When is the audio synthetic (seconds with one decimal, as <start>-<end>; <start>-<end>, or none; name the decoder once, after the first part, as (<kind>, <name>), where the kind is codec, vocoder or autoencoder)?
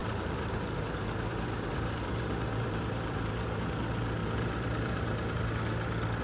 0.0-3.7 (vocoder, BigVGAN v2); 4.2-5.4